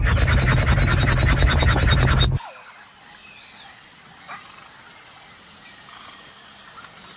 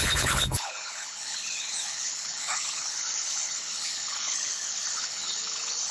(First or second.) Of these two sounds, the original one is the first